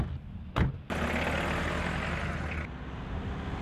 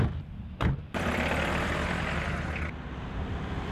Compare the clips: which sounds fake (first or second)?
second